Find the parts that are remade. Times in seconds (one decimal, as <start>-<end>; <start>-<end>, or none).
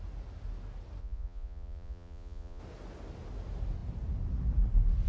1.0-2.6